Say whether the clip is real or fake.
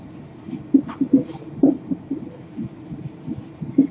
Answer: real